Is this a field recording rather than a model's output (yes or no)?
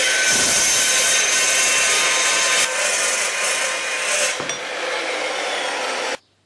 yes